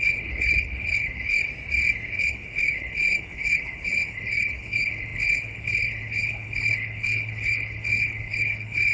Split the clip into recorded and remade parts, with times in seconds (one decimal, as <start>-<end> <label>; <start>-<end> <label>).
0.0-1.4 remade; 1.4-2.2 recorded; 2.2-8.9 remade